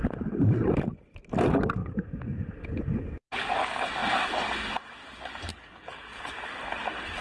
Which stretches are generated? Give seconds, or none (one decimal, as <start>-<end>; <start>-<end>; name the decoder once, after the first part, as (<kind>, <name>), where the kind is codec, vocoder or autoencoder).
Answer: 5.5-6.2 (codec, HILCodec)